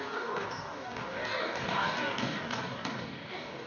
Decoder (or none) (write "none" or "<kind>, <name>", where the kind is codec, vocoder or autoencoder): codec, DAC